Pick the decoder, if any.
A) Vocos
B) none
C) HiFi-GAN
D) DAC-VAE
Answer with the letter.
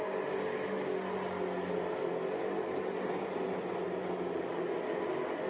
B